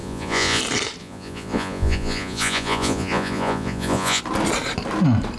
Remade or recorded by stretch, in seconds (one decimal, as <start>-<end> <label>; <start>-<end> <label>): 0.0-0.6 remade; 0.6-1.0 recorded; 1.0-4.2 remade; 4.2-5.4 recorded